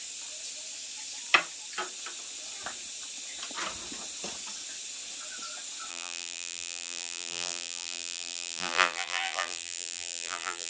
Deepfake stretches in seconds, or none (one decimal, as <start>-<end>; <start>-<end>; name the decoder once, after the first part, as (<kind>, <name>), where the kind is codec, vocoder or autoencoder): 5.9-10.7 (vocoder, BigVGAN v2)